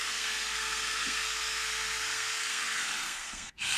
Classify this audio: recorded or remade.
remade